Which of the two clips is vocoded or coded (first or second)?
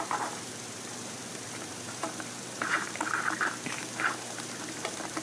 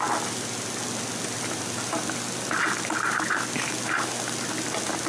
first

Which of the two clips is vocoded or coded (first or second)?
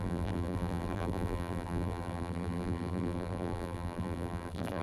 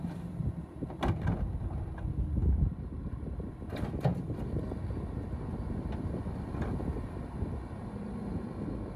first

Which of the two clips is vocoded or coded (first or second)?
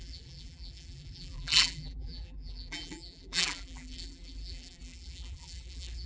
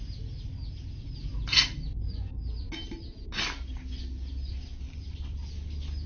first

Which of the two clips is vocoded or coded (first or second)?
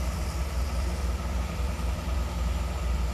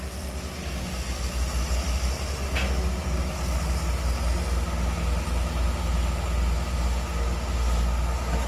first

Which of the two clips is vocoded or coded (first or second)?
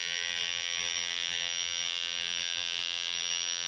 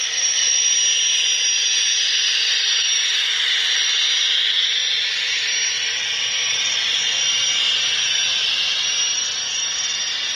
first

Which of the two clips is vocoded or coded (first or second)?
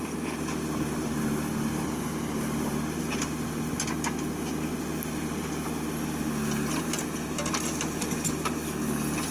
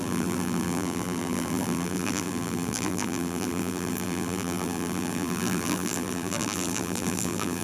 second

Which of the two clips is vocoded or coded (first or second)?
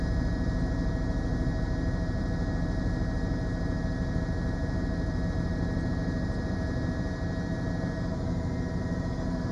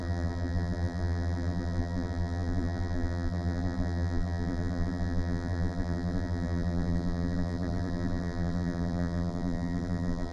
second